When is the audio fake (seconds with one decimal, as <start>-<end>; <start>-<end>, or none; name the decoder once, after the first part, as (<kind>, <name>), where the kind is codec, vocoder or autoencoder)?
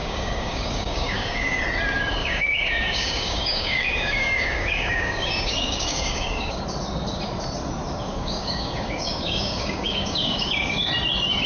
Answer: 0.0-1.6 (codec, DAC); 2.2-6.6; 8.1-10.9